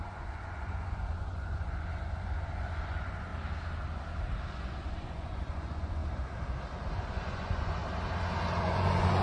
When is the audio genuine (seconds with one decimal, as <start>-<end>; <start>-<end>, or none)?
3.3-4.5; 6.0-7.1; 7.8-8.6